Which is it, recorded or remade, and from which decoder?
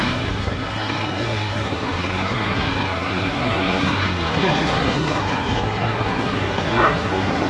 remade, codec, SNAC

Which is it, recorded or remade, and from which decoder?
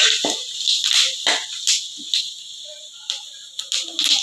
recorded